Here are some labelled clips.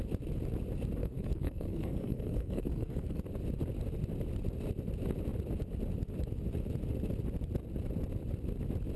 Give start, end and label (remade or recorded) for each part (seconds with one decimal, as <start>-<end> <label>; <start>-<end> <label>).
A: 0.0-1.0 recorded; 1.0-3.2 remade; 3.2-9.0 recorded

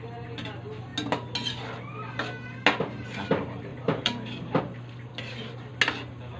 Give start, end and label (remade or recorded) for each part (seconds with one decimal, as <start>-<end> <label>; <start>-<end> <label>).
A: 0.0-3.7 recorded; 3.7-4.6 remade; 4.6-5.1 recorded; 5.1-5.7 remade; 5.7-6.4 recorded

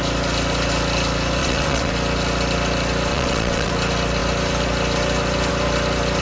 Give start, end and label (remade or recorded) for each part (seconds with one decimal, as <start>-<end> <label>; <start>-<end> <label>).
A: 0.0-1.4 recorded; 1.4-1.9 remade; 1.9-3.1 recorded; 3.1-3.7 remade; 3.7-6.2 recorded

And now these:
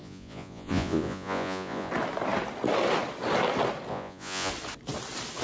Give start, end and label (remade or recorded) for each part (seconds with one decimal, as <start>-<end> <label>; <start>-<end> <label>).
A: 0.0-1.9 remade; 1.9-3.9 recorded; 3.9-4.5 remade; 4.5-5.4 recorded